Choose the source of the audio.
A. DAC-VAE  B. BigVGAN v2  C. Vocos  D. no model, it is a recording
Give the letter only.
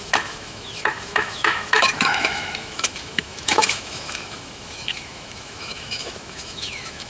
A